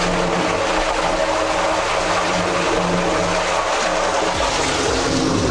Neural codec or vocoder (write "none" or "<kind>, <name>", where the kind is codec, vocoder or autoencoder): none